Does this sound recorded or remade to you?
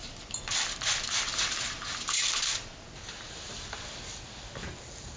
recorded